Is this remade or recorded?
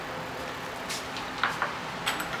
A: recorded